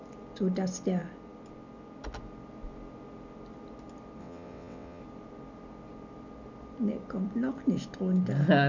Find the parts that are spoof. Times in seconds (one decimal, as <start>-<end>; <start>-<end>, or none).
4.2-5.0